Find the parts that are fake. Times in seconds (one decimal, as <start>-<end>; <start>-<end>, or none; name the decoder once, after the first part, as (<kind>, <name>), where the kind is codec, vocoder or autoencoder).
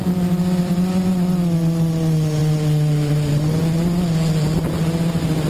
none